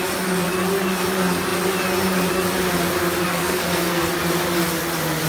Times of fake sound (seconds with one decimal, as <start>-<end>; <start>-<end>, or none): 3.3-4.1